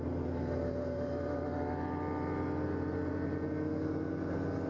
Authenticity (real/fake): real